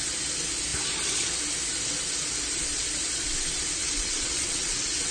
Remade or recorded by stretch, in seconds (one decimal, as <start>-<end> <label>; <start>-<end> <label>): 0.0-3.8 recorded; 3.8-5.1 remade